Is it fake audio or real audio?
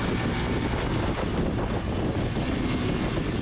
real